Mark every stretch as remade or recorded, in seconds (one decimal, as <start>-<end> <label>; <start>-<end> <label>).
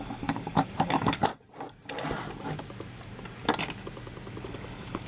0.0-1.3 remade; 1.3-4.4 recorded; 4.4-5.1 remade